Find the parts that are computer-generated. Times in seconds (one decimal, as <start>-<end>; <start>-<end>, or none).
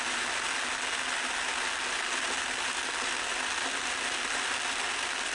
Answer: none